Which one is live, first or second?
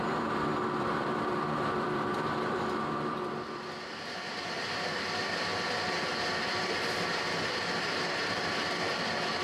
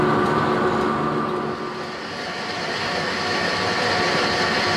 second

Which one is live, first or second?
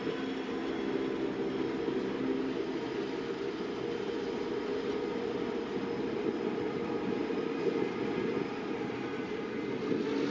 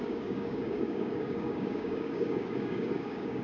first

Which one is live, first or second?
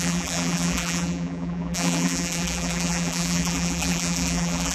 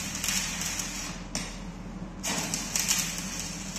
second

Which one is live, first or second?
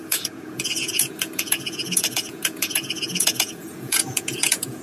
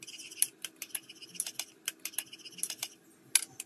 second